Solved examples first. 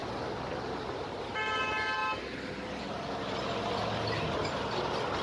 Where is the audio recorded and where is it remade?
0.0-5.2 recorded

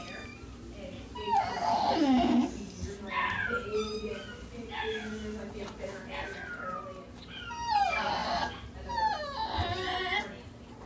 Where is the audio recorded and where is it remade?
0.0-10.9 recorded

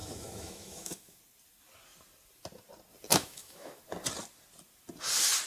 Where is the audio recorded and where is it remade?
0.0-1.2 remade; 1.2-3.1 recorded; 3.1-3.8 remade; 3.8-5.5 recorded

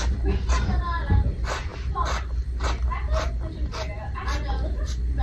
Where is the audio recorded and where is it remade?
0.0-5.2 recorded

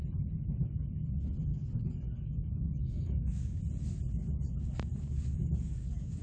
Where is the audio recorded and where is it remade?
0.0-1.5 recorded; 1.5-3.6 remade; 3.6-4.9 recorded; 4.9-6.2 remade

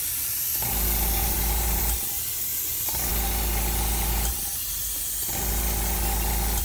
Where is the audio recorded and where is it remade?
0.0-1.2 recorded; 1.2-1.8 remade; 1.8-2.5 recorded; 2.5-3.1 remade; 3.1-6.6 recorded